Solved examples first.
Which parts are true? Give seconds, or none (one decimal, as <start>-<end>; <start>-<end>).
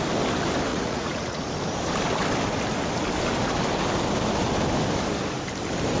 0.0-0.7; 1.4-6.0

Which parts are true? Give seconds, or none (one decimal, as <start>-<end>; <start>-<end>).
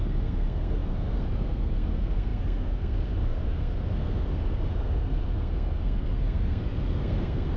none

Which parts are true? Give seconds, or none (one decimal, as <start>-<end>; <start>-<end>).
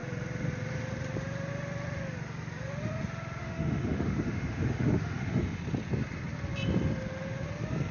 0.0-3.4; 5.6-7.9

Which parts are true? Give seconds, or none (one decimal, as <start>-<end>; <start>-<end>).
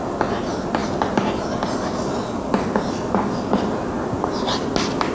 0.0-5.1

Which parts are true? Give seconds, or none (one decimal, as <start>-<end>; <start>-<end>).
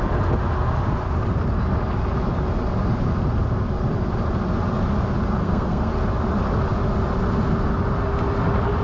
0.0-5.4; 5.9-8.8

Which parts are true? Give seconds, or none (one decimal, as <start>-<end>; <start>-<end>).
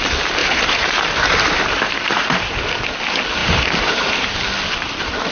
0.0-0.4; 2.6-3.4; 4.4-5.3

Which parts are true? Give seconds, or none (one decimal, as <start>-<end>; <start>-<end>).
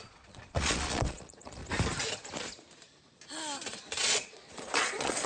1.6-3.7